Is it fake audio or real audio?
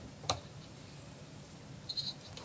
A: fake